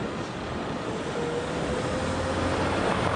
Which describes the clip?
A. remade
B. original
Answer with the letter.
B